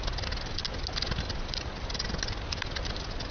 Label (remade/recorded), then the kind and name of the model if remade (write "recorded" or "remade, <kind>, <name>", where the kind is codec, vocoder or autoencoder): recorded